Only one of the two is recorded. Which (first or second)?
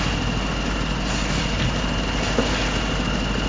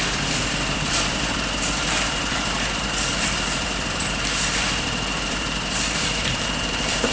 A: first